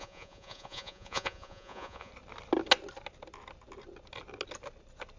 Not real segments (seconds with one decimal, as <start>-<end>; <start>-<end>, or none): 0.0-2.1